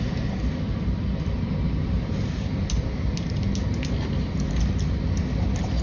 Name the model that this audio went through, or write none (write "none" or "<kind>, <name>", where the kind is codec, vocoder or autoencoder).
none